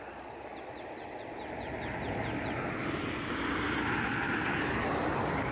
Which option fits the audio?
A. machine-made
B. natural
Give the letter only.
B